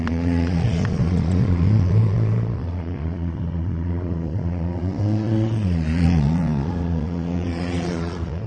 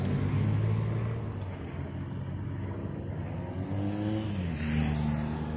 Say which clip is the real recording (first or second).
second